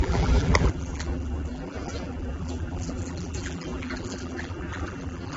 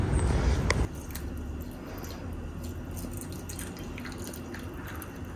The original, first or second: second